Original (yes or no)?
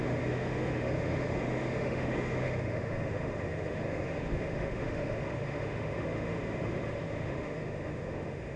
no